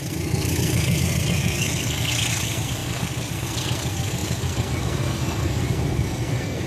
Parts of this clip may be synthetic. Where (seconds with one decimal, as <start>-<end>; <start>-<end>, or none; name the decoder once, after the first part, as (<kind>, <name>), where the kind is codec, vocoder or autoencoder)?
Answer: 0.0-6.7 (codec, SNAC)